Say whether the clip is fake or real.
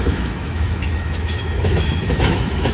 fake